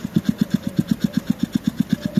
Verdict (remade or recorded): recorded